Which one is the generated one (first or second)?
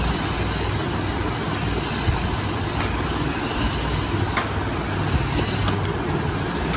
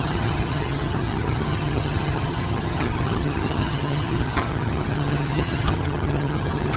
second